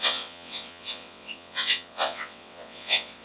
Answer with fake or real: fake